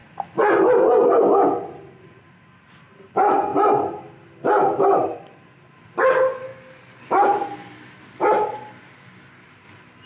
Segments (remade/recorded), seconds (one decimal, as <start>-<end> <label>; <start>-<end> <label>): 0.0-10.1 recorded